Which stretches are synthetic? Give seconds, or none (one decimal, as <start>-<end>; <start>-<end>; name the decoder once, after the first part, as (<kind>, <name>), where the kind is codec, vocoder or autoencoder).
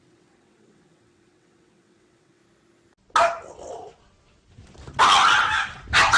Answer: 0.0-2.4 (vocoder, WaveNeXt)